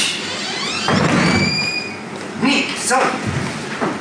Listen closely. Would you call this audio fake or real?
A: real